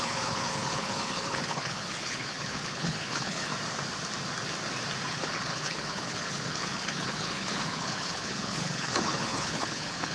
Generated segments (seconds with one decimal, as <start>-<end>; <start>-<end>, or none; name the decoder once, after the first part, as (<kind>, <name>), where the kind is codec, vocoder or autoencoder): 0.0-3.5 (codec, HILCodec); 5.1-10.1